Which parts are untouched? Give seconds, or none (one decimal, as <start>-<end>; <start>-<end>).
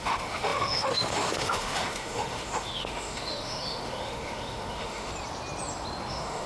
5.1-6.1